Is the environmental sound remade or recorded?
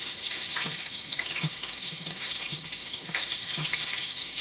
remade